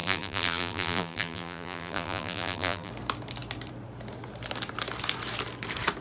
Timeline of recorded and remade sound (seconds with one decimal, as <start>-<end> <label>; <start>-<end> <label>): 0.0-2.9 remade; 2.9-6.0 recorded